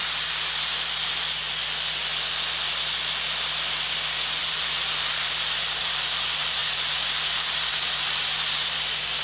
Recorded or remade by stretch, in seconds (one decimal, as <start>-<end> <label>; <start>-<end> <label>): 0.0-4.4 recorded; 4.4-5.2 remade; 5.2-5.8 recorded; 5.8-9.2 remade